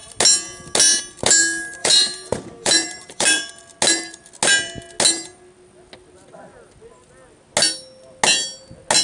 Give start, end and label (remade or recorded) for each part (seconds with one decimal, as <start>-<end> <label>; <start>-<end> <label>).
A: 0.0-1.8 recorded; 1.8-3.5 remade; 3.5-9.0 recorded